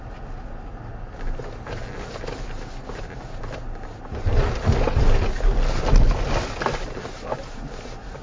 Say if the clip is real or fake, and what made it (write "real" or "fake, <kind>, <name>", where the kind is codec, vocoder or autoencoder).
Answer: real